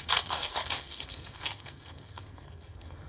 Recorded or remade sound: remade